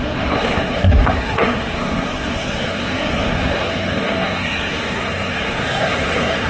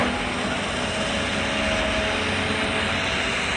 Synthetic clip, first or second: first